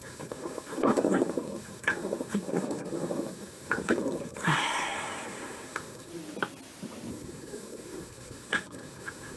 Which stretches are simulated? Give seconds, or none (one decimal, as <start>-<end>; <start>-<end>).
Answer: 0.0-6.1; 7.1-9.4

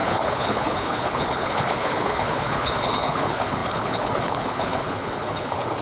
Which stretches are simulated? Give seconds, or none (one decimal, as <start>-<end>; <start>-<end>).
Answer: 0.0-5.8

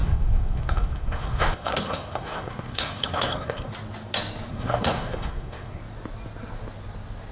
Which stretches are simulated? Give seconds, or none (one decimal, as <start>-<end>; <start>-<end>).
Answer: 0.0-3.7; 4.5-5.8

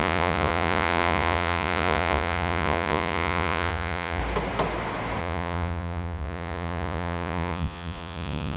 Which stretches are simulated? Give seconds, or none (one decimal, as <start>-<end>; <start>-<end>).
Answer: 0.0-4.2; 5.2-8.6

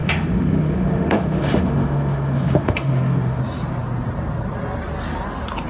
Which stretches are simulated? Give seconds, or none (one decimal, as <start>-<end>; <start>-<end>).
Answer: 0.0-3.4